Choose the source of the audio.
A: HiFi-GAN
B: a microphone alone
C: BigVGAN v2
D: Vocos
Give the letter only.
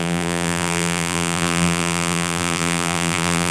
C